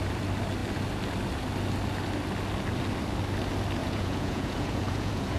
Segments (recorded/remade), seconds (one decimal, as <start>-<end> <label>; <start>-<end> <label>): 0.0-3.8 recorded; 3.8-5.4 remade